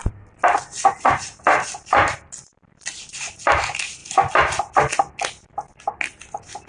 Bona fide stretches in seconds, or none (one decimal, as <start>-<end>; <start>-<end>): 0.0-6.7